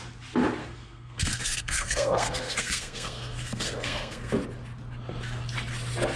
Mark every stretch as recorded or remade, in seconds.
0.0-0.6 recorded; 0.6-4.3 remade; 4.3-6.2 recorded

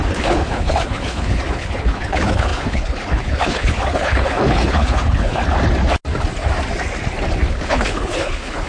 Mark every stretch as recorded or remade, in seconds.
0.0-5.4 remade; 5.4-7.5 recorded; 7.5-8.7 remade